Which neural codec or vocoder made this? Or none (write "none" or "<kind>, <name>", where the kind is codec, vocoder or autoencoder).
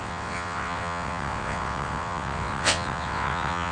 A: vocoder, WaveNeXt